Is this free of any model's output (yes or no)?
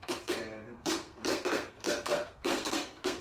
no